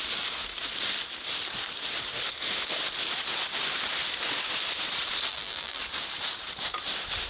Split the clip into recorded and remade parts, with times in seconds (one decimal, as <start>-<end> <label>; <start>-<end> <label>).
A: 0.0-5.3 recorded; 5.3-5.8 remade; 5.8-7.3 recorded